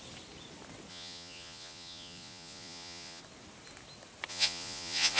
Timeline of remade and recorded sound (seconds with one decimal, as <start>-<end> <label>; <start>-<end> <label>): 0.0-0.9 recorded; 0.9-3.2 remade; 3.2-4.3 recorded; 4.3-5.2 remade